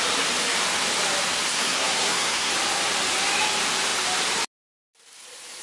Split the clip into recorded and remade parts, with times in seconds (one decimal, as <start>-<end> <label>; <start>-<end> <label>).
0.0-1.5 recorded; 1.5-2.5 remade; 2.5-5.6 recorded